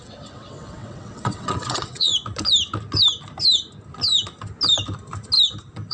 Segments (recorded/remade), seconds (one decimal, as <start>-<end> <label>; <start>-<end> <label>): 0.0-2.1 remade; 2.1-5.9 recorded

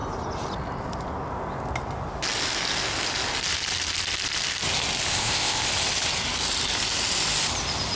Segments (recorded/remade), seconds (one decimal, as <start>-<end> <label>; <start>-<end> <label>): 0.0-5.1 recorded; 5.1-5.7 remade; 5.7-8.0 recorded